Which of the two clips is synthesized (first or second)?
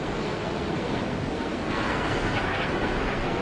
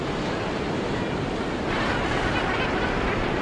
first